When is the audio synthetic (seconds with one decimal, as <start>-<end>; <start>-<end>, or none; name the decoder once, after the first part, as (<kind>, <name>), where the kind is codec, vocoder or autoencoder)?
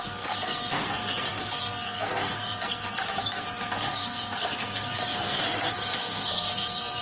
0.0-7.0 (codec, SNAC)